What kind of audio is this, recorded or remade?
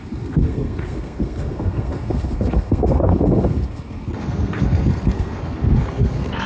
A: remade